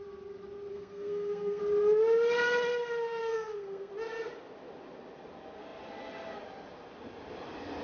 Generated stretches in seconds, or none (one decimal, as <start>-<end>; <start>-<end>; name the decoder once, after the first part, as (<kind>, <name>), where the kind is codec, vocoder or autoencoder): 0.7-1.6 (codec, SNAC); 3.2-3.9